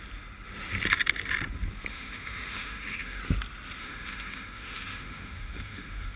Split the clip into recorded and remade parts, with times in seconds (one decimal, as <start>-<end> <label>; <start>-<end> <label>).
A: 0.0-1.9 recorded; 1.9-3.2 remade; 3.2-3.8 recorded; 3.8-6.2 remade